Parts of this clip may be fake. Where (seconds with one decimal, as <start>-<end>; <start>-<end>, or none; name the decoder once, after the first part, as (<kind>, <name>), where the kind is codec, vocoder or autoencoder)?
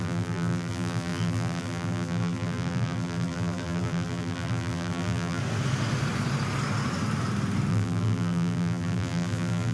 0.0-5.4 (vocoder, BigVGAN v2); 7.7-9.7